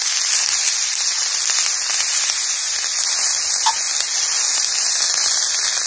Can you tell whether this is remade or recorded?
recorded